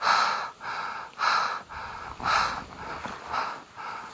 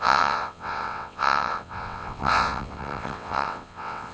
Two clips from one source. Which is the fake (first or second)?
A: second